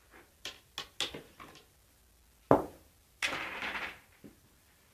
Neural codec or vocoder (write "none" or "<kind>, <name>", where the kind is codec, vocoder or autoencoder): none